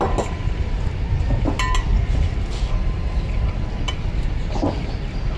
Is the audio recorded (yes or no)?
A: yes